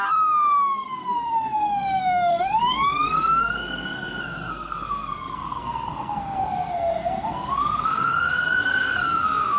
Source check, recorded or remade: remade